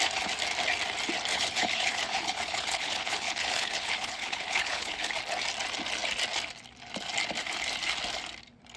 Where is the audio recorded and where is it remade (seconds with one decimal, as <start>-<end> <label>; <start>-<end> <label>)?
0.0-1.3 recorded; 1.3-5.1 remade; 5.1-8.8 recorded